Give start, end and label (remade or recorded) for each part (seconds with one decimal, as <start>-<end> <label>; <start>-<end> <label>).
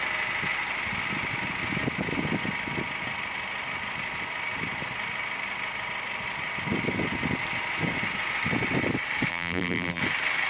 0.0-9.3 recorded; 9.3-10.0 remade; 10.0-10.5 recorded